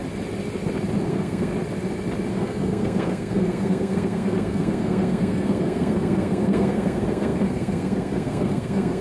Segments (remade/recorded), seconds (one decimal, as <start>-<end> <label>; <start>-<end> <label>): 0.0-1.1 recorded; 1.1-1.5 remade; 1.5-2.3 recorded; 2.3-9.0 remade